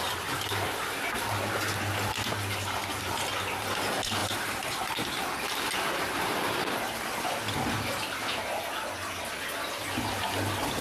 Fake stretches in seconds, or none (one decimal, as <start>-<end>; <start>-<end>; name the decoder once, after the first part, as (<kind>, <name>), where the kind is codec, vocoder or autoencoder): 4.2-4.8 (vocoder, BigVGAN v2)